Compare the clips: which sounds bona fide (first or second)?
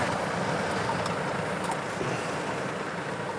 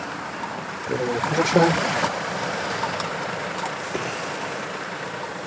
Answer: first